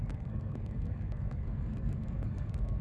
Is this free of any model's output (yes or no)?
no